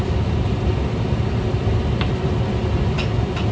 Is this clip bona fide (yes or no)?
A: yes